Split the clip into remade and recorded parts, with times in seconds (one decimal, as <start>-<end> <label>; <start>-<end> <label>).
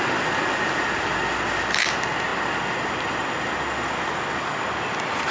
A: 0.0-5.3 recorded